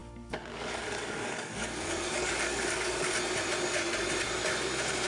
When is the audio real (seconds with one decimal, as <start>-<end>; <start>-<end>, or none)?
3.1-5.1